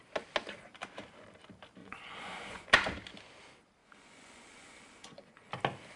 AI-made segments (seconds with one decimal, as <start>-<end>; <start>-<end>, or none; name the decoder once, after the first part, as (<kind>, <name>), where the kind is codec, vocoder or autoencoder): 1.8-2.7 (vocoder, Vocos); 3.8-5.5